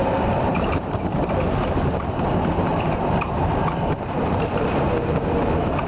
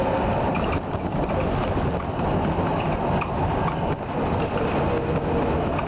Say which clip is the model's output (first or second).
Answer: first